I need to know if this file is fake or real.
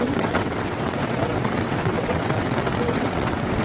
fake